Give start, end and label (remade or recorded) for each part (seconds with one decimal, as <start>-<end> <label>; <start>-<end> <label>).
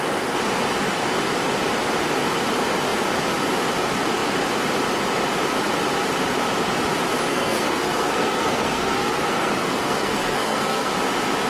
0.0-7.3 recorded; 7.3-10.9 remade; 10.9-11.5 recorded